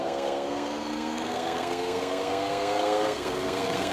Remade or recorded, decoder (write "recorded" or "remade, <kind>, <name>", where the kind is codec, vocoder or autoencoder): remade, codec, SNAC